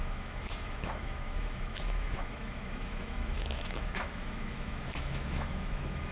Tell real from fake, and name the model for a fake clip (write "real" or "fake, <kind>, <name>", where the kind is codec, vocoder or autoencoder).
fake, autoencoder, DAC-VAE